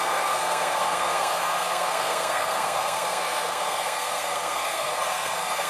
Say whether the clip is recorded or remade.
remade